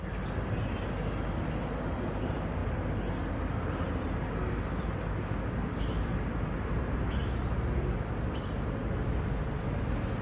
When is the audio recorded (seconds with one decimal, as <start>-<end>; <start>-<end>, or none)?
0.0-10.2